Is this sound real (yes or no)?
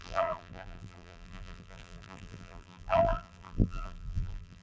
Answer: no